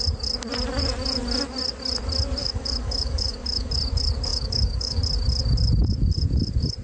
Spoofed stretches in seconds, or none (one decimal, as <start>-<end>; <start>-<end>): 2.4-3.7; 4.3-5.0